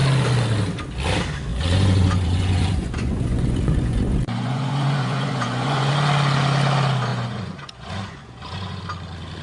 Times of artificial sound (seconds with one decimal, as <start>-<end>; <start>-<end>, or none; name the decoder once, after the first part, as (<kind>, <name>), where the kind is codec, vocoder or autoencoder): 1.5-5.9 (vocoder, Vocos); 7.1-8.8